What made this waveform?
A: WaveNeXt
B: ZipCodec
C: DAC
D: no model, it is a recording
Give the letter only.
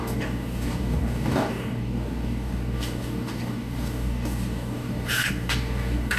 C